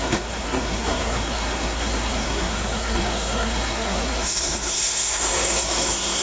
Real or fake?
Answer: fake